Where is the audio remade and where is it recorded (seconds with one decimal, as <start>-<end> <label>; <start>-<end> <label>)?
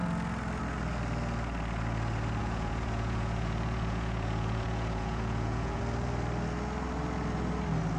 0.0-2.4 recorded; 2.4-5.8 remade; 5.8-8.0 recorded